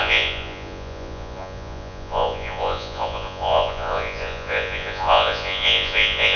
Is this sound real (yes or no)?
no